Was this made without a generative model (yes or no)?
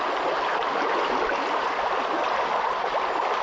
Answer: yes